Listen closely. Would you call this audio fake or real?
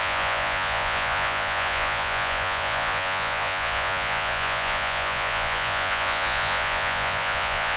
fake